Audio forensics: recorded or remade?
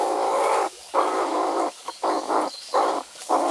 remade